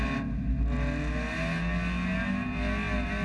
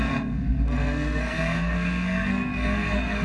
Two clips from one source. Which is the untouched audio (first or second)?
first